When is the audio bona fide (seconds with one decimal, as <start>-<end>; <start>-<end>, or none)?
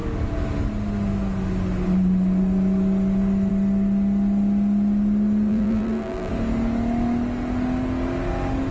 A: 0.0-5.5; 6.3-8.7